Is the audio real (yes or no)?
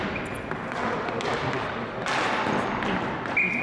yes